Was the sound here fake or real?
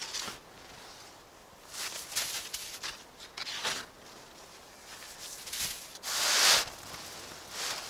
real